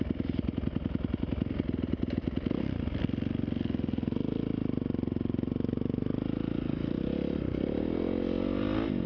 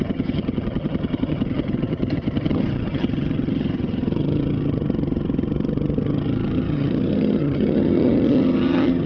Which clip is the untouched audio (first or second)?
first